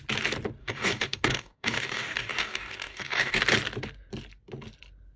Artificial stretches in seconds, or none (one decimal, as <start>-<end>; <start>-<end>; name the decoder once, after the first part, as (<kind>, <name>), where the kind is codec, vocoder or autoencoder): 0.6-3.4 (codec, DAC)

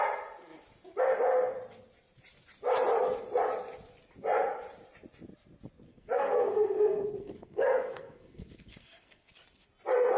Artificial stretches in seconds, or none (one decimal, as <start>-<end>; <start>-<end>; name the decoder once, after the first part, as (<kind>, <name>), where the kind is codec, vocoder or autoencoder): 5.9-9.3 (codec, SNAC)

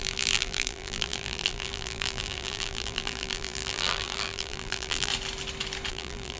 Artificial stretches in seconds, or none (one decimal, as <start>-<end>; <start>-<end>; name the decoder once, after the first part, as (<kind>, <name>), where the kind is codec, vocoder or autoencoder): 0.0-5.1 (vocoder, BigVGAN v2); 5.9-6.4